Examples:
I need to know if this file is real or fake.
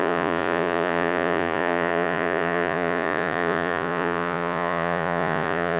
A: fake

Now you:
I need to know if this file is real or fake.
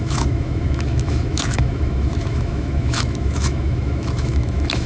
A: fake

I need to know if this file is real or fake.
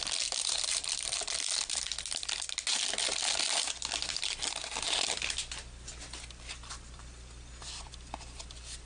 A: real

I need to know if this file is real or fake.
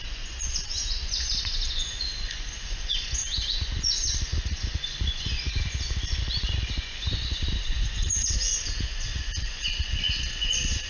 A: fake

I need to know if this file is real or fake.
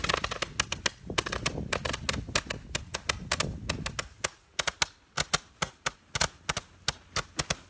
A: real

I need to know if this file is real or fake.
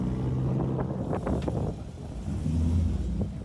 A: real